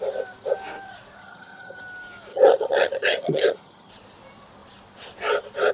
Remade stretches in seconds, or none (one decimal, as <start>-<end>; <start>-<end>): 1.2-1.8; 2.3-3.9